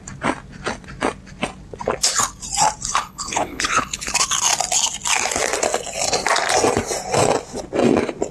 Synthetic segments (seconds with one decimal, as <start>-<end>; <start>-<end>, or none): 2.9-4.1